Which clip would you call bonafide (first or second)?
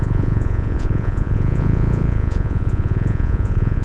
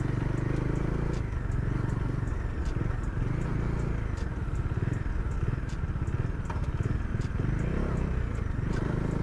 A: second